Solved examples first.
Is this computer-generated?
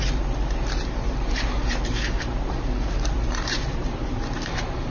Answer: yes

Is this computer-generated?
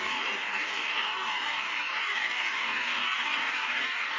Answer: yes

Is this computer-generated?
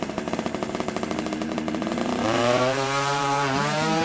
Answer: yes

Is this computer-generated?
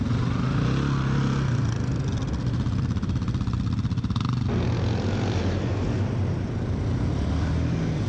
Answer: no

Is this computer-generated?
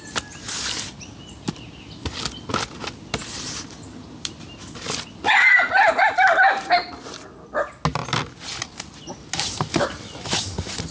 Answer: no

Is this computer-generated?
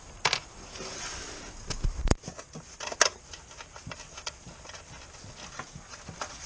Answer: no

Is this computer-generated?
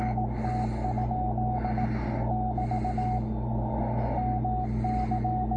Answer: no